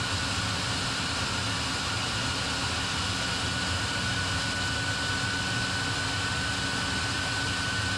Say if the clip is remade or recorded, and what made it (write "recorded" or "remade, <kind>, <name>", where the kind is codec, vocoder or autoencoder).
recorded